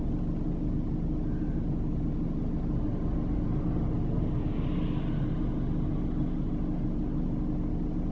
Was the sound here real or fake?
real